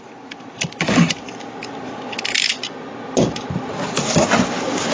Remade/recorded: recorded